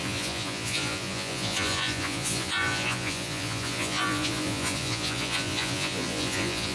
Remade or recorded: remade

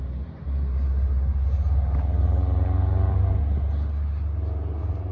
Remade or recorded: recorded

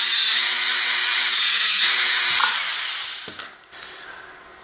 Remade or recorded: recorded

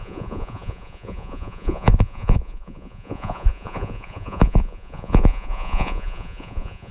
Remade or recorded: remade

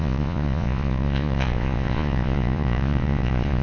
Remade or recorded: remade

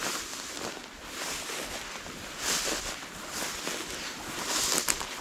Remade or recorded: recorded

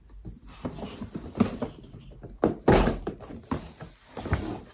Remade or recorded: recorded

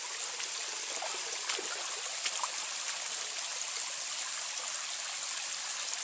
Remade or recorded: recorded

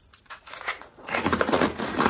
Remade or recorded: remade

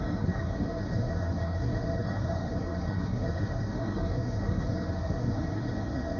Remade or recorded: remade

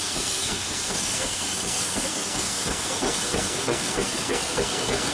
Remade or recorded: remade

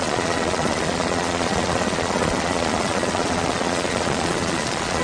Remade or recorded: remade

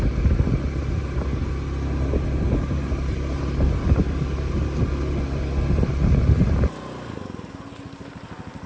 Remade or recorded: recorded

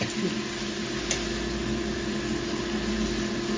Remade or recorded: recorded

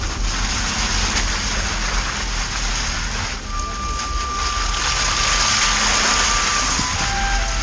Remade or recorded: recorded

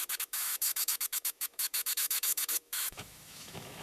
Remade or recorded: remade